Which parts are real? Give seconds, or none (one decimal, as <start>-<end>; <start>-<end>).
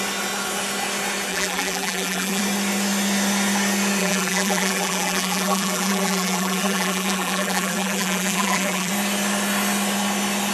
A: 0.0-1.3; 2.4-4.0; 8.9-10.5